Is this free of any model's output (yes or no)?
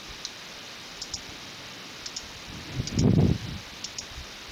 yes